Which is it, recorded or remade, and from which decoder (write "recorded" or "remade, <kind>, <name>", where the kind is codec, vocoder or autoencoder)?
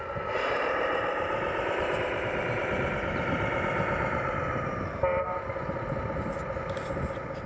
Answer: remade, vocoder, BigVGAN v2